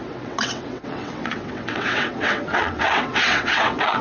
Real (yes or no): no